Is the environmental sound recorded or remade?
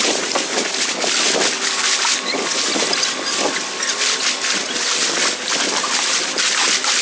recorded